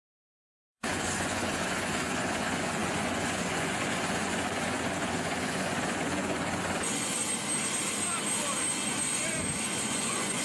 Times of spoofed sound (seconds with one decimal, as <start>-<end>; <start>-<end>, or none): 0.0-7.2; 8.7-10.4